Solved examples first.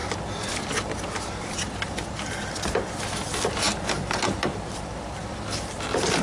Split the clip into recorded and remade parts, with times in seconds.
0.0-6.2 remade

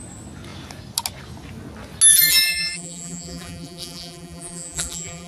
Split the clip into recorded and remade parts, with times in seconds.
0.0-2.1 recorded; 2.1-5.3 remade

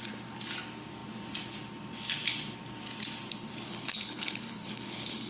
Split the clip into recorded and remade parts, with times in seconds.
0.0-3.7 recorded; 3.7-5.3 remade

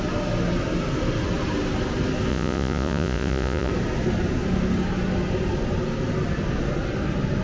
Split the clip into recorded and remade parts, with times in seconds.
0.0-2.3 recorded; 2.3-3.7 remade; 3.7-7.4 recorded

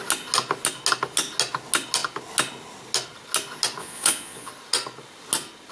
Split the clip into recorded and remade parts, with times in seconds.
0.0-3.8 recorded; 3.8-4.5 remade; 4.5-5.7 recorded